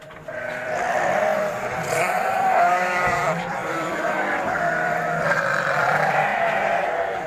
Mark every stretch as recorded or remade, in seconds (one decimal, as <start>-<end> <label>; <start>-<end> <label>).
0.0-6.3 remade; 6.3-7.3 recorded